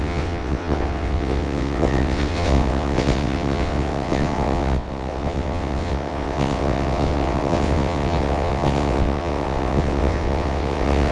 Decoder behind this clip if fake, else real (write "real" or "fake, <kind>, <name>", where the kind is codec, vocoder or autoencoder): fake, vocoder, WaveNeXt